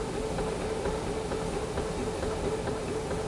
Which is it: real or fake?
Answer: real